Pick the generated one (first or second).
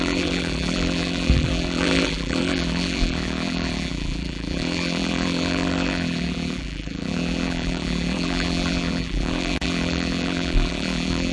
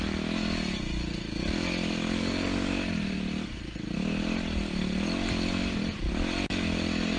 first